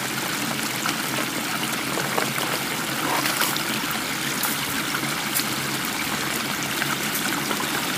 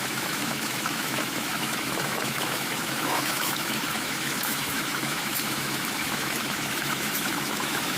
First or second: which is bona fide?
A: first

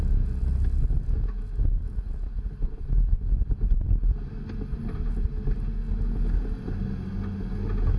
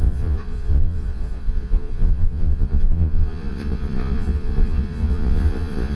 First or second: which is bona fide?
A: first